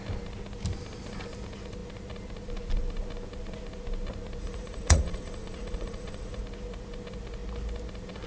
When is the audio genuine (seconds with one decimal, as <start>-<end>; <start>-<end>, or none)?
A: 0.0-4.4; 6.4-8.3